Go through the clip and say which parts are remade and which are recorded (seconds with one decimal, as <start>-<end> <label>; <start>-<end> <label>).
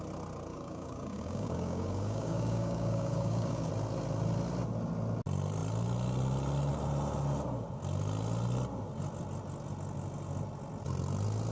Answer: 0.0-0.5 recorded; 0.5-3.7 remade; 3.7-11.5 recorded